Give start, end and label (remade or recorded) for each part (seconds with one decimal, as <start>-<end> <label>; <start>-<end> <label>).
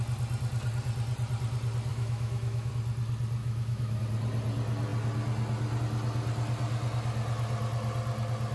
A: 0.0-1.9 recorded; 1.9-2.7 remade; 2.7-3.4 recorded; 3.4-4.0 remade; 4.0-8.5 recorded